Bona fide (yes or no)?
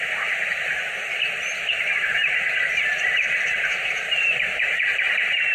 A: yes